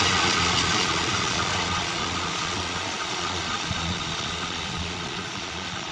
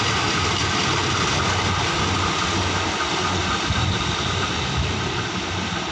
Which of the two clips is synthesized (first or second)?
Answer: first